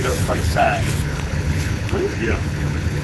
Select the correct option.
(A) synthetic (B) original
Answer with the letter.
A